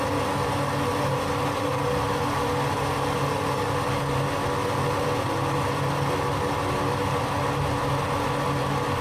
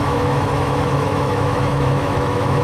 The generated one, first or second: second